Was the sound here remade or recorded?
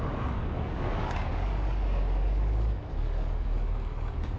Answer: remade